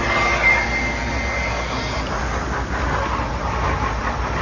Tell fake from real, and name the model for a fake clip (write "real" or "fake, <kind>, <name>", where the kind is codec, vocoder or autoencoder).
real